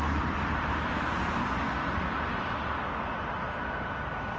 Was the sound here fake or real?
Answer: real